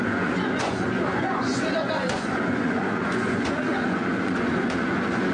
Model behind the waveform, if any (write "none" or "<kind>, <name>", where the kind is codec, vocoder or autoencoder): vocoder, Vocos